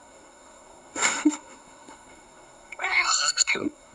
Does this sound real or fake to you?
fake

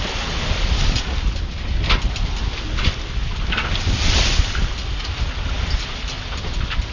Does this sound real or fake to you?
real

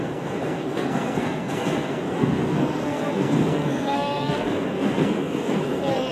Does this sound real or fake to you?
fake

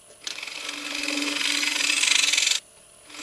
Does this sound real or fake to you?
real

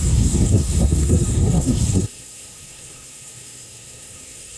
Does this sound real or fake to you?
fake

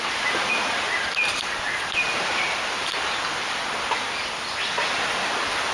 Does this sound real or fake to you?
real